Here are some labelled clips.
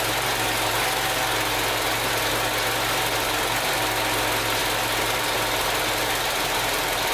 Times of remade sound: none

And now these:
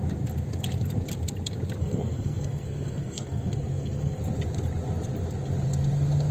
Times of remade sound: 1.8-4.2 (codec, SNAC)

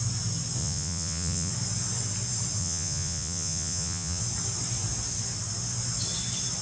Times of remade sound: 0.6-1.5 (vocoder, Vocos); 2.6-4.2